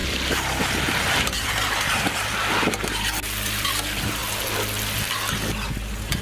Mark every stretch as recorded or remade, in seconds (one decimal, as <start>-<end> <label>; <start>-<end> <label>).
0.0-4.2 remade; 4.2-6.2 recorded